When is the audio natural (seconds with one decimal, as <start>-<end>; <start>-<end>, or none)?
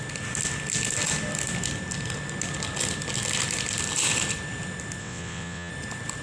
0.0-5.0; 5.7-6.2